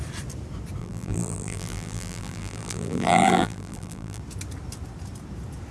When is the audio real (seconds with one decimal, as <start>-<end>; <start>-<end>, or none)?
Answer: 0.0-0.8; 4.2-5.7